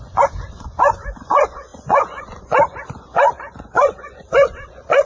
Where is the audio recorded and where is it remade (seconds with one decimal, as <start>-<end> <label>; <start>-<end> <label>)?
0.0-5.1 remade